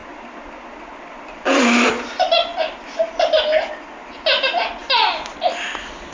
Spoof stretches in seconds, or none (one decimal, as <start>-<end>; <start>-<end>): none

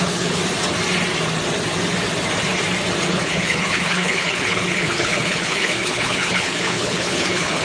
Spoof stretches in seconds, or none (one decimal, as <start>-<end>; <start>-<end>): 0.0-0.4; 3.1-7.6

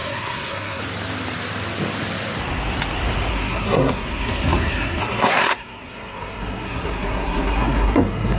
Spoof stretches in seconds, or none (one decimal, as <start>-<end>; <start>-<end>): 0.0-0.8; 3.3-8.4

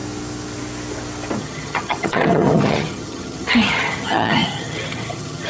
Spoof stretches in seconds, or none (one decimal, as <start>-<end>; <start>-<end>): 1.4-5.5

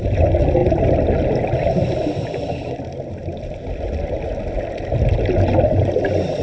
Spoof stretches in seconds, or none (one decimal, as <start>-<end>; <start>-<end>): none

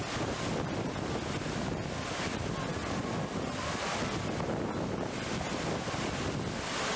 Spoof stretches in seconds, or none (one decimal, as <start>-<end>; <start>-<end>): none